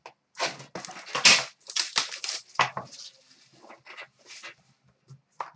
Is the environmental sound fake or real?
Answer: real